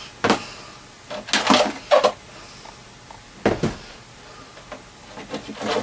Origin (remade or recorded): recorded